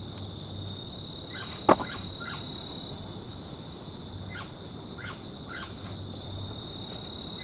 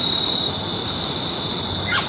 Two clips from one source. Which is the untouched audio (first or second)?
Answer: first